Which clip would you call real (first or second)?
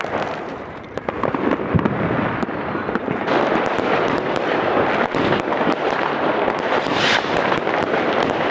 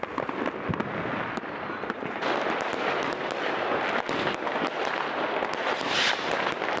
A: second